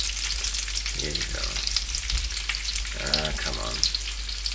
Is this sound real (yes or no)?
yes